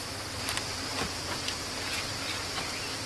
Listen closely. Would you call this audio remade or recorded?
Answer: recorded